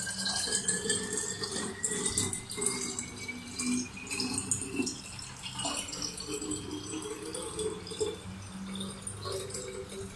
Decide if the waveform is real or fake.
real